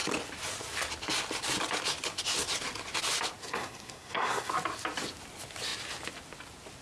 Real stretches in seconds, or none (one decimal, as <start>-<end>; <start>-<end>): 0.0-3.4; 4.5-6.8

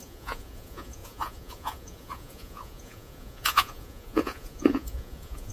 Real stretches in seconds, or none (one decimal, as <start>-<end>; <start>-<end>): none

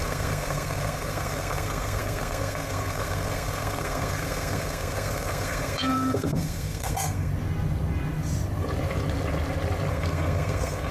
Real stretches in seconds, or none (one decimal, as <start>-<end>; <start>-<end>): 7.3-9.9

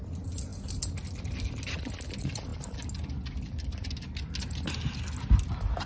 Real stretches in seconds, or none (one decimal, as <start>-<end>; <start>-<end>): 0.0-5.9

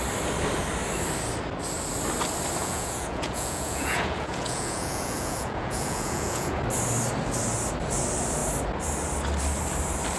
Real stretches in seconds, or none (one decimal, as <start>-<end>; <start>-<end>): 0.0-2.6; 6.6-10.2

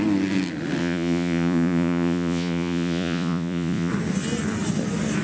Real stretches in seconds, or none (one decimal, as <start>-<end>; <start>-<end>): 0.0-0.8; 3.9-5.2